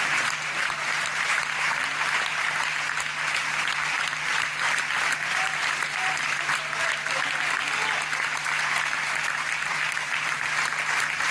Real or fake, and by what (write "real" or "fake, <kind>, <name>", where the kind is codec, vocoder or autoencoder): real